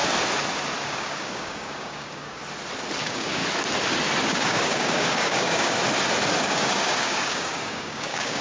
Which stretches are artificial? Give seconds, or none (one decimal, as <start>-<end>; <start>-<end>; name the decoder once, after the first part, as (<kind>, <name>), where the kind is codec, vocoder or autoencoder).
0.8-2.4 (codec, DAC); 3.0-3.4; 4.3-5.8; 6.4-8.4